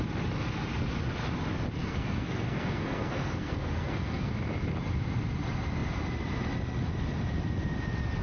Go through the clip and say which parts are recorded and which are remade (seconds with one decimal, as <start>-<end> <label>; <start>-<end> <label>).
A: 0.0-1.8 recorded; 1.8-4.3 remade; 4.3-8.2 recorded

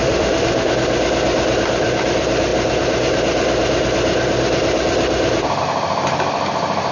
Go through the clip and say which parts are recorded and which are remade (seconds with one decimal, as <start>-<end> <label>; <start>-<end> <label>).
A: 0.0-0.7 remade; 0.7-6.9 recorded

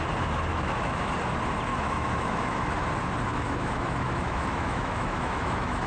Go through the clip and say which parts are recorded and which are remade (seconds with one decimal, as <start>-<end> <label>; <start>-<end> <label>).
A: 0.0-0.5 recorded; 0.5-1.1 remade; 1.1-1.7 recorded; 1.7-2.7 remade; 2.7-3.3 recorded; 3.3-5.9 remade

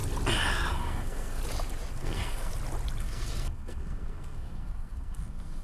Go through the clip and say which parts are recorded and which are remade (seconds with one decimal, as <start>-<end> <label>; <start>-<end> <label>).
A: 0.0-0.7 recorded; 0.7-1.4 remade; 1.4-2.0 recorded; 2.0-2.5 remade; 2.5-3.0 recorded; 3.0-5.6 remade

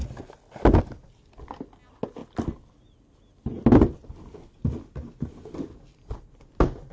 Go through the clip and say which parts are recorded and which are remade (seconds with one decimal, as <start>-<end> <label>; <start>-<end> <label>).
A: 0.0-6.9 recorded